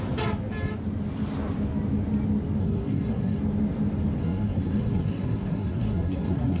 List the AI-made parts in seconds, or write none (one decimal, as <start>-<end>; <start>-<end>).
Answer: 2.6-3.4; 4.2-6.6

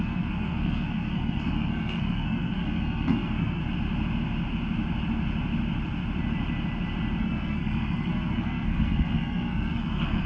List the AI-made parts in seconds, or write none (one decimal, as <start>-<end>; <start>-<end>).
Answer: 0.0-3.6; 7.2-10.3

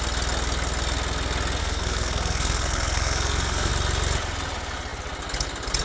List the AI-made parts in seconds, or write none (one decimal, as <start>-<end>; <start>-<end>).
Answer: 1.6-3.7

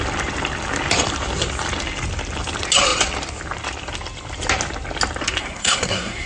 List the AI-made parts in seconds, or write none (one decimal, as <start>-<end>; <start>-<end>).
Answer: 5.4-6.3

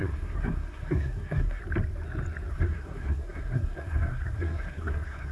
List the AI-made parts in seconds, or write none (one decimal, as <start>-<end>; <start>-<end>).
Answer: 0.0-1.6; 2.5-5.3

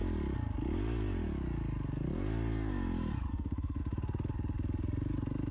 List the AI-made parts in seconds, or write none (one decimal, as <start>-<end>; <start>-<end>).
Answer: 3.3-3.8

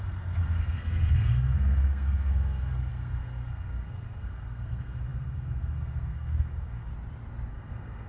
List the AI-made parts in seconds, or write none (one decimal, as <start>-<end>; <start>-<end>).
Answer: 0.0-6.9; 7.5-8.1